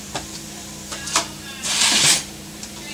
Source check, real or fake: fake